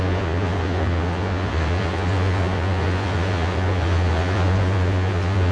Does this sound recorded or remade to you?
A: remade